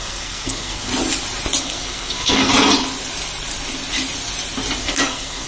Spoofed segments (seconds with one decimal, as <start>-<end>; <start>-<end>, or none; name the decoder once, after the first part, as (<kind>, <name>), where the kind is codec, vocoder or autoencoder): 0.0-0.9 (codec, SNAC); 1.6-2.5; 4.8-5.5